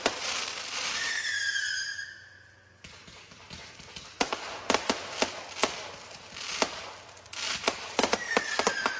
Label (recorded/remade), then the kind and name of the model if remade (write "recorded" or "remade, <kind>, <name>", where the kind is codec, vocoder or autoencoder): recorded